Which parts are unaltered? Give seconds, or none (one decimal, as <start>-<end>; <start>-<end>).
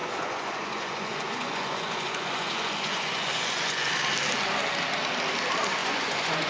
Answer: 3.9-5.8